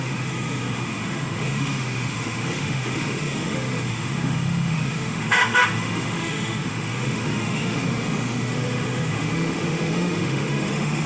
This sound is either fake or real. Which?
fake